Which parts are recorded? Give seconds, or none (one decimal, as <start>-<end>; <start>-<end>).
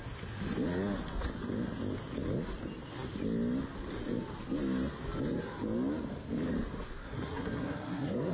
0.0-7.0